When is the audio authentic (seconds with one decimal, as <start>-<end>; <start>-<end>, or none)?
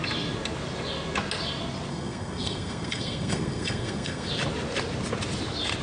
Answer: 0.0-1.9; 4.3-5.8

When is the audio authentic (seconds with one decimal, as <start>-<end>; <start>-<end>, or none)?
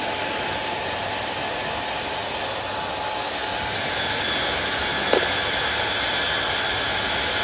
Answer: 0.0-7.4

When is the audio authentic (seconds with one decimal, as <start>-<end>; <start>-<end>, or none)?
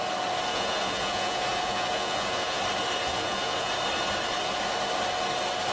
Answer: 0.0-0.5; 2.6-3.1; 3.7-5.7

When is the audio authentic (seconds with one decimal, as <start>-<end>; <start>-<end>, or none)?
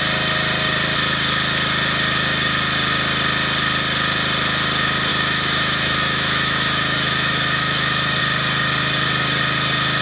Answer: 0.0-5.1; 8.2-10.0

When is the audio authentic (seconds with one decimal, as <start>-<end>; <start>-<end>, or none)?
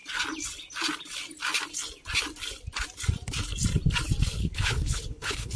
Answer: 0.0-4.4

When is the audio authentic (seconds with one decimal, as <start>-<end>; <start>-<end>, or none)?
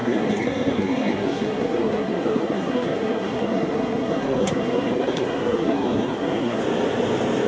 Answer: 6.6-7.5